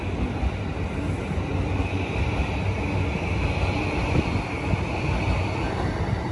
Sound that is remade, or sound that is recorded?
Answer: recorded